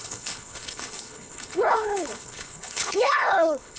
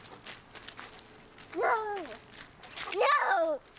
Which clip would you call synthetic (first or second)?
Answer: first